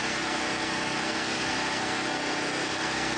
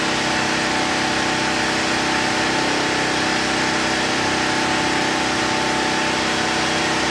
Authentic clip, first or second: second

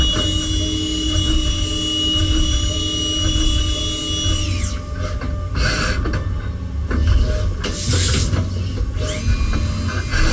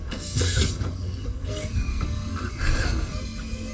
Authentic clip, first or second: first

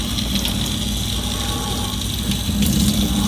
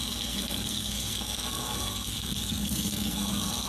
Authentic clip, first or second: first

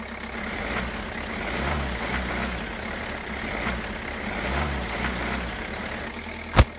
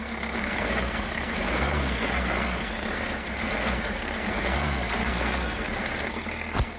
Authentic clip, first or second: first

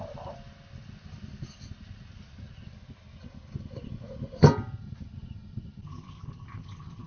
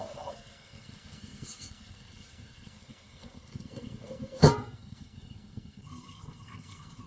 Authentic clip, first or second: first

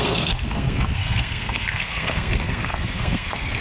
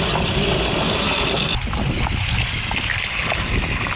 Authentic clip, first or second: second